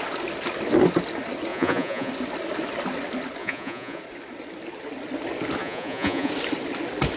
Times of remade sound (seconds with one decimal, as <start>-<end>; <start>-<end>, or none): 1.5-2.1; 3.4-4.0; 5.6-6.3

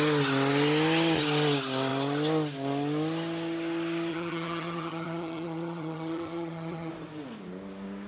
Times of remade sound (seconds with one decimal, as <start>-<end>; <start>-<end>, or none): 4.1-6.9

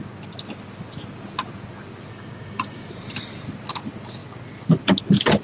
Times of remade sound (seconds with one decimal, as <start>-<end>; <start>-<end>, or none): 2.1-2.9